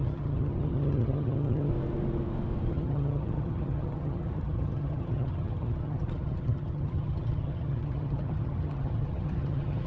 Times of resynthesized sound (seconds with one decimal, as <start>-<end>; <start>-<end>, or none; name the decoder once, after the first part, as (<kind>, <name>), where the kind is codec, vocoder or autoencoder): 0.0-1.7 (vocoder, HiFi-GAN); 2.7-9.9